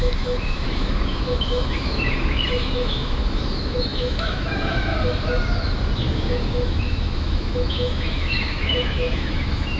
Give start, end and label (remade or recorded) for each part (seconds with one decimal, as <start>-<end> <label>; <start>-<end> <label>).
0.0-4.9 remade; 4.9-6.1 recorded; 6.1-9.8 remade

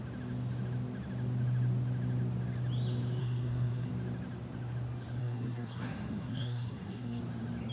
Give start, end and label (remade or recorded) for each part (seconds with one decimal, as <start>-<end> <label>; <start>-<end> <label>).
0.0-3.2 recorded; 3.2-3.9 remade; 3.9-5.2 recorded; 5.2-7.2 remade; 7.2-7.7 recorded

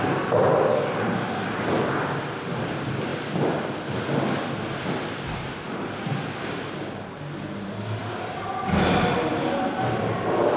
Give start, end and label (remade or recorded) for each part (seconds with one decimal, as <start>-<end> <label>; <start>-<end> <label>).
0.0-10.6 recorded

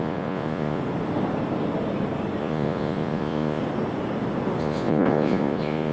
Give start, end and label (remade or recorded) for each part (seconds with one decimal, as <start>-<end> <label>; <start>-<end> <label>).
0.0-0.8 remade; 0.8-2.4 recorded; 2.4-3.6 remade; 3.6-4.6 recorded; 4.6-5.9 remade

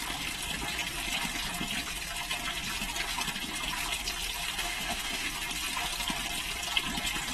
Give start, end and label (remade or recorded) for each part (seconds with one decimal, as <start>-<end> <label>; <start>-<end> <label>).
0.0-4.6 recorded; 4.6-5.3 remade; 5.3-7.3 recorded